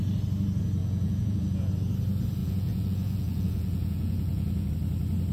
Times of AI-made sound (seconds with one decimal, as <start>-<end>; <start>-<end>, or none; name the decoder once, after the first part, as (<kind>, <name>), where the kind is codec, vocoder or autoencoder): 0.8-1.7 (vocoder, Vocos); 2.4-4.7